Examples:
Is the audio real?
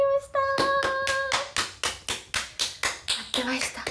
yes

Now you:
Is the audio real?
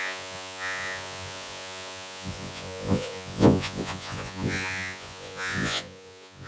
no